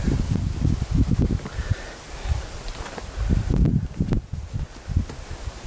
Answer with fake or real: real